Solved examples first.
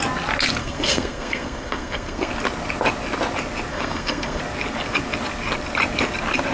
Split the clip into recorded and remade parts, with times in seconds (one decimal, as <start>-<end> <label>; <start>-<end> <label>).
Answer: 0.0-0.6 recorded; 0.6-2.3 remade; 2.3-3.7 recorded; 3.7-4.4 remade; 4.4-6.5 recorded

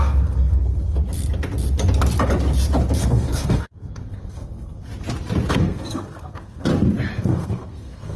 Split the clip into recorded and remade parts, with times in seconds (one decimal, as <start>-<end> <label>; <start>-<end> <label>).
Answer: 0.0-1.0 remade; 1.0-3.0 recorded; 3.0-4.9 remade; 4.9-5.5 recorded; 5.5-6.7 remade; 6.7-7.2 recorded; 7.2-8.2 remade

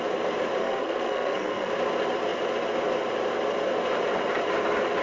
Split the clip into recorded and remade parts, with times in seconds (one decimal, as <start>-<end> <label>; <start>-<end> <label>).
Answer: 0.0-0.6 recorded; 0.6-1.7 remade; 1.7-5.0 recorded

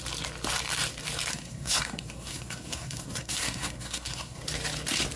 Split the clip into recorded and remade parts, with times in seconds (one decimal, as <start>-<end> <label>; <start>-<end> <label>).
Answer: 0.0-1.3 recorded; 1.3-4.4 remade; 4.4-5.2 recorded